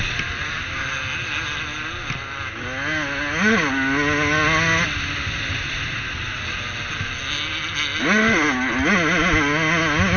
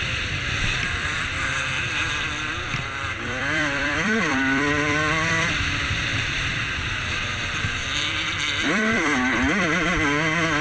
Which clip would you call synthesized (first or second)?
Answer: second